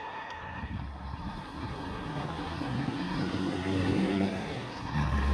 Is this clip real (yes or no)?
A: no